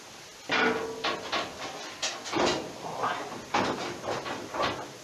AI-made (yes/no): no